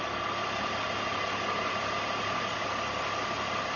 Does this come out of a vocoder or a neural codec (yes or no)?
no